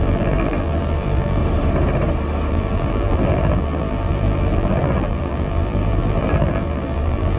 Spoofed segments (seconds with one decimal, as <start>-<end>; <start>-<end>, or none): 0.0-1.4; 2.5-7.4